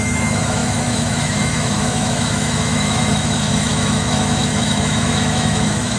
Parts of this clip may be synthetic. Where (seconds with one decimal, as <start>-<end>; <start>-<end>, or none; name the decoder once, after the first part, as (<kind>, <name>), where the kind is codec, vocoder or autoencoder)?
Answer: 0.0-6.0 (autoencoder, DAC-VAE)